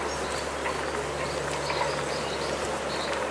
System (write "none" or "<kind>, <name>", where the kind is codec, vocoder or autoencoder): none